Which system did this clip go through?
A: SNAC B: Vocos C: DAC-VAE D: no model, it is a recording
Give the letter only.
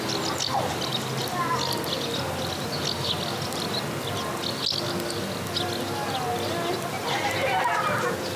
D